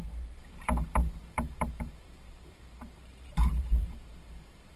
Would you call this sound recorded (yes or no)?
no